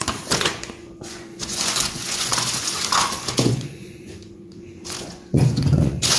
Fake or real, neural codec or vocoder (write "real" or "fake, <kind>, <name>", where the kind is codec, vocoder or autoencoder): fake, vocoder, Vocos